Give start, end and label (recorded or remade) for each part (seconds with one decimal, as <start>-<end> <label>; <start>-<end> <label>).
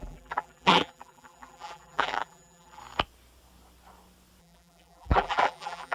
0.0-2.8 remade; 2.8-4.4 recorded; 4.4-5.9 remade